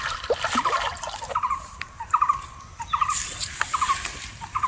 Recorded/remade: recorded